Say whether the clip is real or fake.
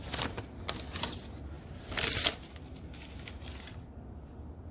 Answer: real